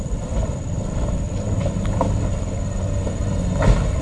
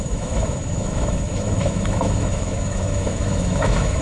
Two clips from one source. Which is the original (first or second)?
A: first